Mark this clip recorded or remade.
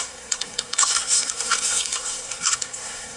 remade